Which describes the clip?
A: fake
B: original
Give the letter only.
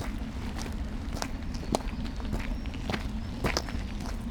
B